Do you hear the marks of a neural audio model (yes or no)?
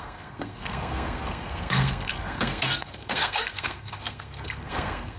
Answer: yes